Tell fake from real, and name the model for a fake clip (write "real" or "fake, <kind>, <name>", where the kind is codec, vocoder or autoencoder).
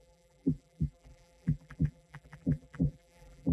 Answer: fake, vocoder, BigVGAN v2